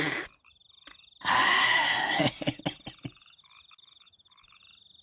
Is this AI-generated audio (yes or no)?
no